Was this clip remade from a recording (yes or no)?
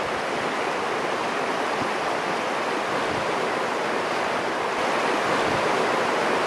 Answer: no